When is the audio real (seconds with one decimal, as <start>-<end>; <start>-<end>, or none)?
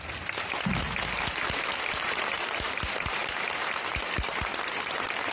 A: 0.0-5.3